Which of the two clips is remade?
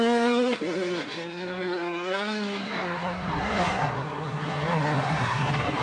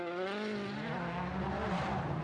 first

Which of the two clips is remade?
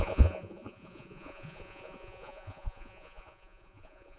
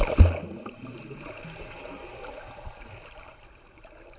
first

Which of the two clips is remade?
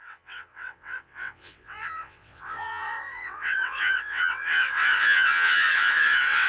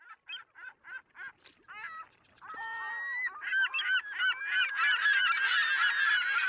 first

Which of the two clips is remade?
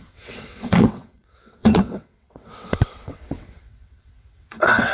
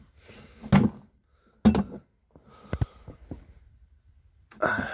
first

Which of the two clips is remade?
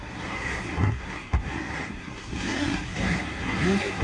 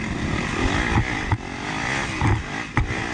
first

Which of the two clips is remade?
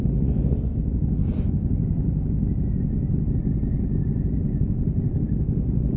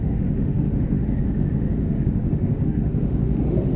second